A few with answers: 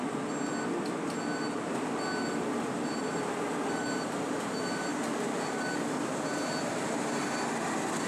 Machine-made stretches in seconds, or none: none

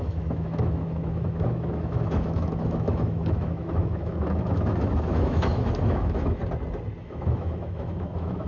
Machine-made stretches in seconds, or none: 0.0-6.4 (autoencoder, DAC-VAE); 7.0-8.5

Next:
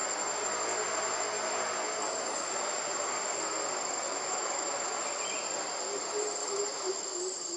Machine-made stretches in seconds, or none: 4.1-5.0 (autoencoder, DAC-VAE); 6.4-6.9